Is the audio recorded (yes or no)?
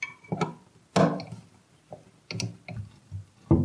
yes